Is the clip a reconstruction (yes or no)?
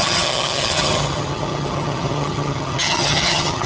yes